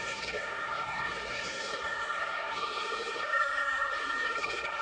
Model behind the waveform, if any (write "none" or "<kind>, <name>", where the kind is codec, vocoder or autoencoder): codec, SNAC